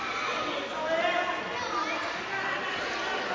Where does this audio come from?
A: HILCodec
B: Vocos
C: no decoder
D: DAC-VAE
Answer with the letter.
C